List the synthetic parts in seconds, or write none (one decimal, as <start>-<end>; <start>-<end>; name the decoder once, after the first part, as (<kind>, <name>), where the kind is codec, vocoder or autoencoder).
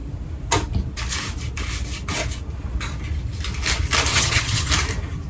4.1-4.7 (vocoder, HiFi-GAN)